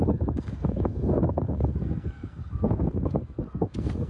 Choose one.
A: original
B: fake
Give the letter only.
B